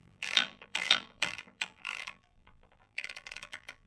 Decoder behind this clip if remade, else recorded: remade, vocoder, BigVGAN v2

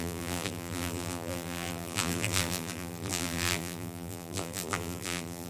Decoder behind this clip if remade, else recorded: remade, vocoder, BigVGAN v2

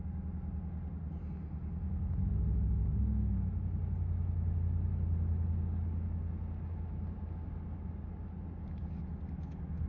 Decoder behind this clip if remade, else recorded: recorded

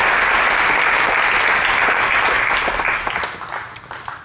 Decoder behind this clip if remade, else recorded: recorded